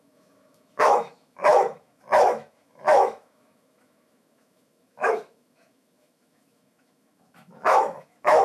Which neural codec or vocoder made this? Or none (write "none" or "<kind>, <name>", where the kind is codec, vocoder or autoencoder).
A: autoencoder, DAC-VAE